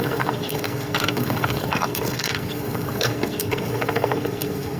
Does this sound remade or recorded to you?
remade